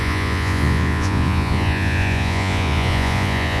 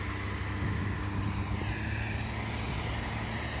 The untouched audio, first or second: second